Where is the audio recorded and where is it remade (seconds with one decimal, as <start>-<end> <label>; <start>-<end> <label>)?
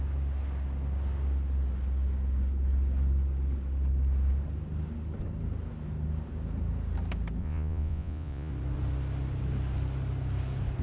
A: 0.0-7.4 recorded; 7.4-8.5 remade; 8.5-10.8 recorded